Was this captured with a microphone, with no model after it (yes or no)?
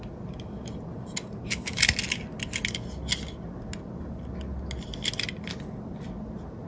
yes